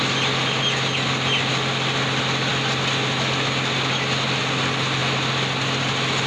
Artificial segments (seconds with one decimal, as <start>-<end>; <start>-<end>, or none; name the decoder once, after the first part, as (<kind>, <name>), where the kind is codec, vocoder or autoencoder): none

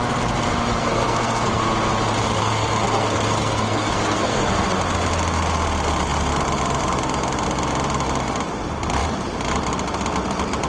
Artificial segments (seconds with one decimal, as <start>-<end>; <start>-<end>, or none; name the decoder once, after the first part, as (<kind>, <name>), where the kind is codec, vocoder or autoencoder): 0.8-1.6 (codec, SNAC); 2.4-4.7